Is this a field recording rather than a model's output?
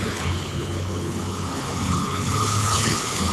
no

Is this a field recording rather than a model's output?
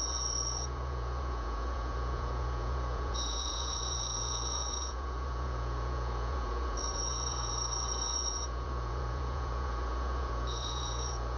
no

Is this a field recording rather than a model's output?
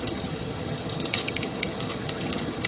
no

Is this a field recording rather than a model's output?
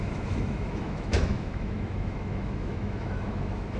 no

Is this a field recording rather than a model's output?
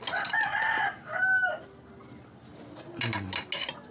yes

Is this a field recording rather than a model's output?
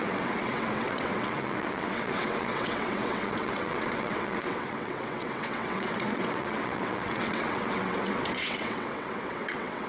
no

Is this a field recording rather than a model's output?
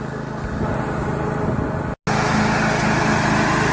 yes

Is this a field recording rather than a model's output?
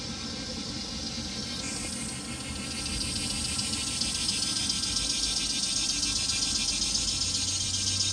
yes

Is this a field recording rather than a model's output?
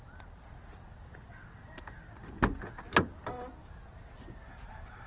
yes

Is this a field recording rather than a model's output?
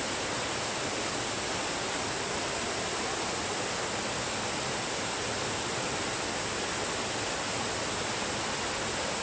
yes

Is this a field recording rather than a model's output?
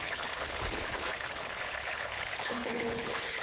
no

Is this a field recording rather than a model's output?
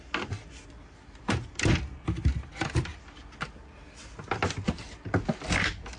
yes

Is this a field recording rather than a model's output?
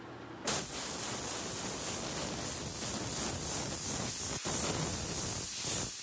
yes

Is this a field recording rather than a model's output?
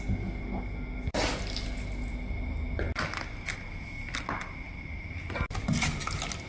yes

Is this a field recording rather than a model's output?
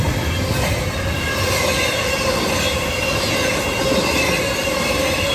yes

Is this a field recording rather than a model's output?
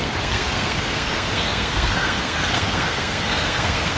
no